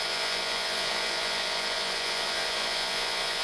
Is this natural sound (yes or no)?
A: no